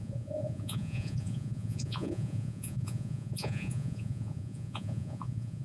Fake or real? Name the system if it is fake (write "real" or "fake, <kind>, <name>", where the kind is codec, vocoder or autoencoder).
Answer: fake, vocoder, Vocos